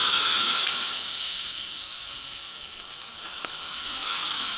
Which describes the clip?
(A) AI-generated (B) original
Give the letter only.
A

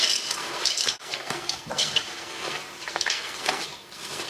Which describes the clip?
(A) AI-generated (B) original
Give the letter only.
A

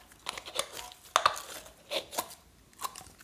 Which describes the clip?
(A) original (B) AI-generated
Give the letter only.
A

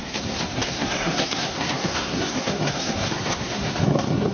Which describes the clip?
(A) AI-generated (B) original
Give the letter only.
A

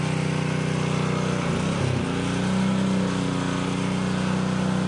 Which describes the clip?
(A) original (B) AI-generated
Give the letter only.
A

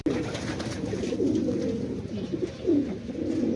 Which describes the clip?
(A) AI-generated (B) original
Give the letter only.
B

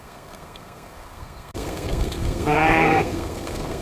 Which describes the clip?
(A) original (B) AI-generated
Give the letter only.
B